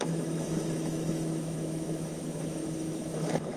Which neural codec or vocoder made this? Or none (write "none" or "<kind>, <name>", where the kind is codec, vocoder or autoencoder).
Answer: autoencoder, DAC-VAE